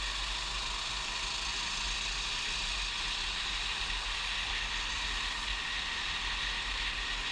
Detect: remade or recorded recorded